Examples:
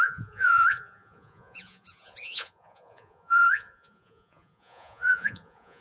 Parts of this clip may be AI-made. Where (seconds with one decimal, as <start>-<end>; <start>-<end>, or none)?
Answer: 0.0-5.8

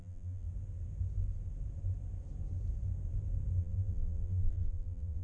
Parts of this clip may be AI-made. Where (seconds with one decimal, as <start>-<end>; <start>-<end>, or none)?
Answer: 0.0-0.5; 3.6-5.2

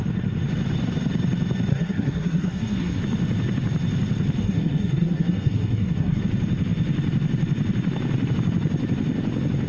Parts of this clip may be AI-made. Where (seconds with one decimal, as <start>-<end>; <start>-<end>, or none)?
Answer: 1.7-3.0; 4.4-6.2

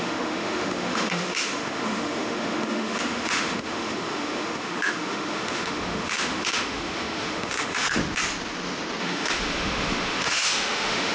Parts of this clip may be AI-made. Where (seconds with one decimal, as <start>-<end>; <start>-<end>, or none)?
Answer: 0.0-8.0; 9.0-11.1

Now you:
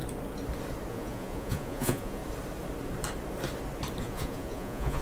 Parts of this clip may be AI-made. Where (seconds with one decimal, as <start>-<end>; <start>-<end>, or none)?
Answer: 0.9-2.2; 4.0-5.0

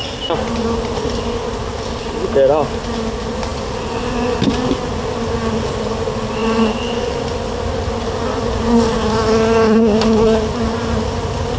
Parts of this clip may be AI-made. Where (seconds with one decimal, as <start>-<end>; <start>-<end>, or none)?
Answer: none